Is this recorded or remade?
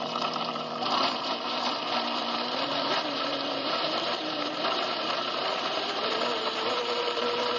remade